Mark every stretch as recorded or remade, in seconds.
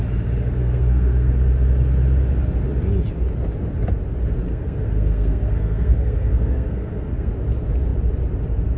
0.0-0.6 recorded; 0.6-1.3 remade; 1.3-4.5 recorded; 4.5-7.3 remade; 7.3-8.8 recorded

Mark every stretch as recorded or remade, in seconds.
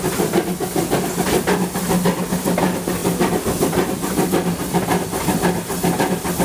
0.0-3.0 recorded; 3.0-5.0 remade; 5.0-6.4 recorded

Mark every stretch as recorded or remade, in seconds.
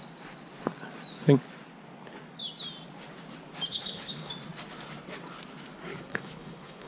0.0-3.7 recorded; 3.7-4.3 remade; 4.3-5.9 recorded; 5.9-6.9 remade